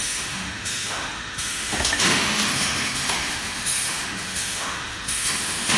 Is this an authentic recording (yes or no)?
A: no